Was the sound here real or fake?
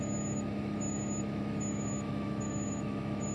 fake